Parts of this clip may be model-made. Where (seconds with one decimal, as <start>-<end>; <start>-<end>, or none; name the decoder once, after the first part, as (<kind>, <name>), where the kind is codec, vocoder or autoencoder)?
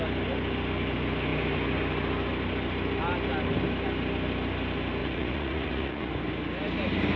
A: 5.0-6.1 (vocoder, Vocos)